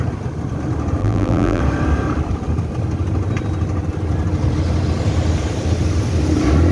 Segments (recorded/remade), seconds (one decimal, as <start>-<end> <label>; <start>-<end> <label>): 0.0-1.0 recorded; 1.0-1.6 remade; 1.6-6.7 recorded